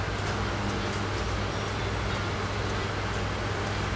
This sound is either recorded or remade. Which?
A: recorded